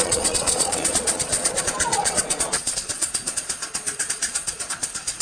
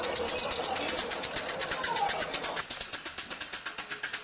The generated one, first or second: first